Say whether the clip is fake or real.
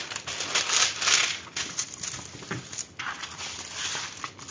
real